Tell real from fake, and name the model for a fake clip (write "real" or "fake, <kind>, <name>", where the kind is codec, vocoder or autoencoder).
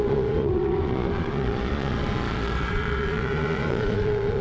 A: fake, vocoder, Vocos